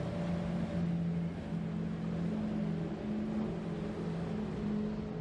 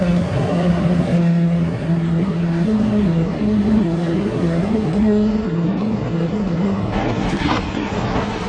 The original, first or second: first